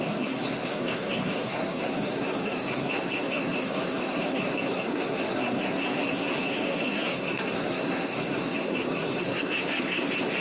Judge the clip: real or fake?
fake